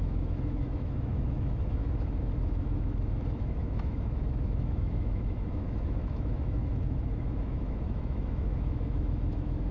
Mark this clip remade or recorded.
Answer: remade